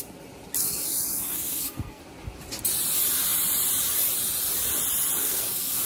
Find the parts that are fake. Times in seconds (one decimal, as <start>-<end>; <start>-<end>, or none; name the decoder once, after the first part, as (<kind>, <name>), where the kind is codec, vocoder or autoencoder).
0.6-2.0 (codec, SNAC); 5.2-5.9